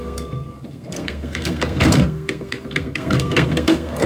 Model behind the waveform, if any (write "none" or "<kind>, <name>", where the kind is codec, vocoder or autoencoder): codec, SNAC